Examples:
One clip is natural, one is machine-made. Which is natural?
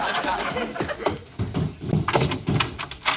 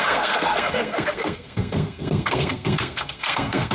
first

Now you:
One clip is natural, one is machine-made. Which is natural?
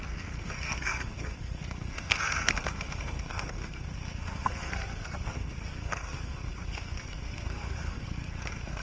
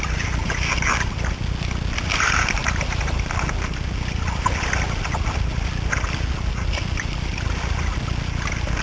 second